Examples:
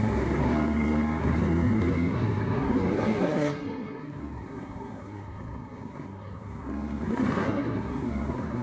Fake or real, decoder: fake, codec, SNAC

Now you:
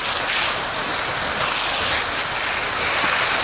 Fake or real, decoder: real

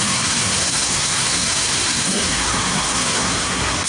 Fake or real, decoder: fake, codec, SNAC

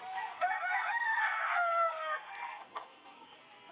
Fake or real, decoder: fake, codec, SNAC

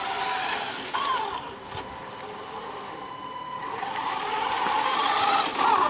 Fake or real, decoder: real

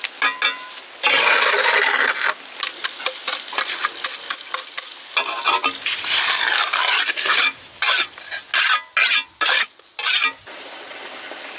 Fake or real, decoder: real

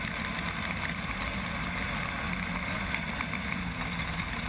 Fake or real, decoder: real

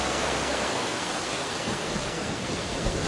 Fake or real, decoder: fake, codec, SNAC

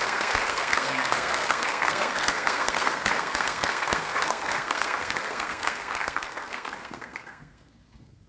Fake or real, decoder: fake, codec, SNAC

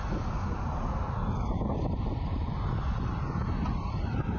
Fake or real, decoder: real